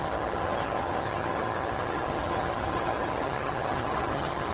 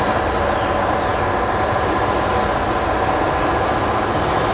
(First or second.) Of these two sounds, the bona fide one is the second